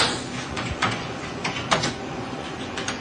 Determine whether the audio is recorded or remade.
remade